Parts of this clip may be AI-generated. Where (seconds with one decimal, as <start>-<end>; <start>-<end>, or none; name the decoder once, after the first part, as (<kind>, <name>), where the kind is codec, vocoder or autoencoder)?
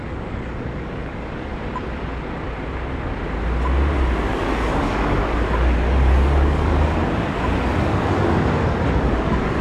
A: 0.0-1.5 (codec, DAC); 4.3-7.0; 7.8-9.6